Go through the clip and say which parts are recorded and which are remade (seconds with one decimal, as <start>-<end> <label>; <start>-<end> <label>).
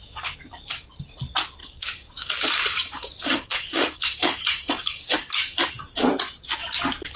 0.0-0.9 remade; 0.9-1.6 recorded; 1.6-5.9 remade; 5.9-7.2 recorded